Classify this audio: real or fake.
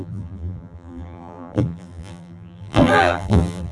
fake